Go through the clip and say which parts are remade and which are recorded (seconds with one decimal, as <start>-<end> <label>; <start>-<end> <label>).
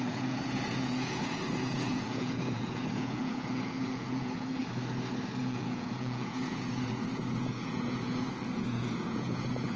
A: 0.0-4.6 remade; 4.6-5.4 recorded; 5.4-9.8 remade